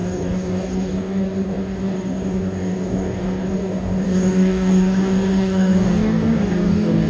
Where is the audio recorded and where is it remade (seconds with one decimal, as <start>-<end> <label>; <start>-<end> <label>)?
0.0-7.1 remade